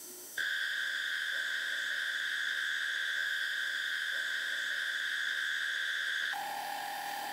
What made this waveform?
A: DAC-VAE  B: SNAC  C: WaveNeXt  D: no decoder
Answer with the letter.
A